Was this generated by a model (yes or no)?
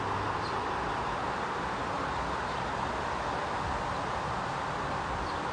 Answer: no